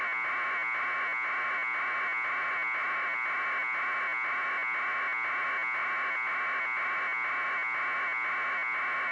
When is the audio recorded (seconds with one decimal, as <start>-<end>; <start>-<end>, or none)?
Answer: 0.0-9.1